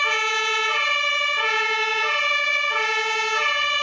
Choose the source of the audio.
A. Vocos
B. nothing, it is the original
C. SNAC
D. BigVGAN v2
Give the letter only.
A